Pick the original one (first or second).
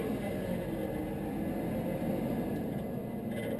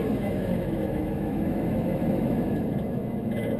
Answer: first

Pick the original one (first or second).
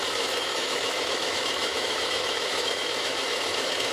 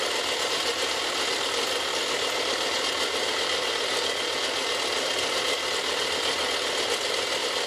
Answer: second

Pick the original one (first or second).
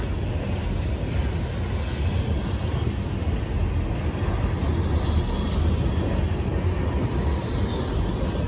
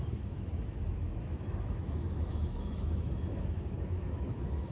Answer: first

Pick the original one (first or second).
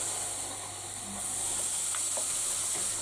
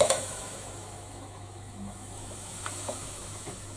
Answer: first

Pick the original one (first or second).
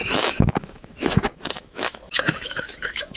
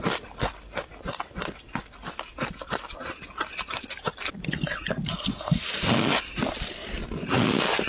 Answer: second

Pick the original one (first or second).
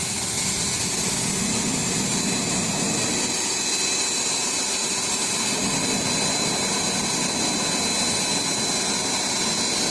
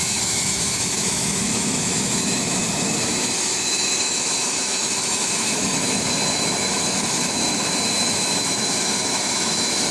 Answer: first